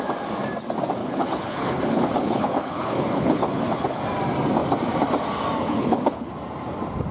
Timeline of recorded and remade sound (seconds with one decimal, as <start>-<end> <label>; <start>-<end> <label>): 0.0-1.0 recorded; 1.0-4.0 remade; 4.0-5.6 recorded; 5.6-6.3 remade; 6.3-7.1 recorded